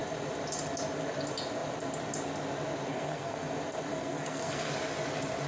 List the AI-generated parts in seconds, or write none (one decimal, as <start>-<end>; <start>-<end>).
2.9-3.5; 3.9-4.7